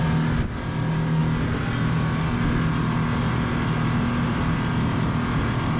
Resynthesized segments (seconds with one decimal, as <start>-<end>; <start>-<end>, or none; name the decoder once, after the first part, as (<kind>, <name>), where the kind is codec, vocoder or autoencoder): none